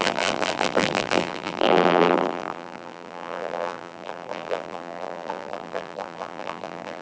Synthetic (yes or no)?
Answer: yes